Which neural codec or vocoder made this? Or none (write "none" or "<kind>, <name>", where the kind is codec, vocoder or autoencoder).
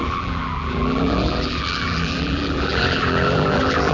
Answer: vocoder, BigVGAN v2